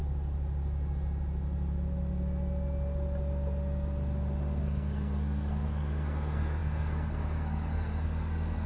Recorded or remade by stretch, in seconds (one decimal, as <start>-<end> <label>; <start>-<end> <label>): 0.0-4.6 recorded; 4.6-8.7 remade